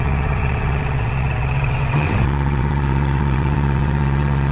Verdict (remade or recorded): remade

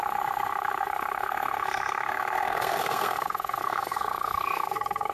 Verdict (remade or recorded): remade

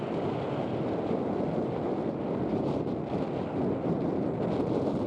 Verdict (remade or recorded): recorded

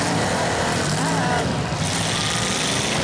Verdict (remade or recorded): recorded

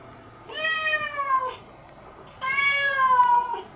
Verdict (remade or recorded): recorded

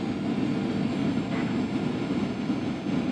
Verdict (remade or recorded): recorded